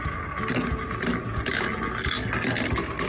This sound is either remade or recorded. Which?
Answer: recorded